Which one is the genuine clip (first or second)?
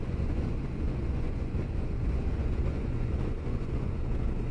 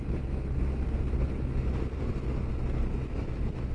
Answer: second